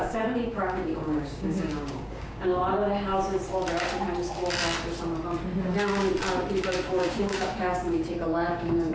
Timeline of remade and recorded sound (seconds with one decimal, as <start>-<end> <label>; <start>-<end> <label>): 0.0-2.6 remade; 2.6-6.9 recorded; 6.9-8.9 remade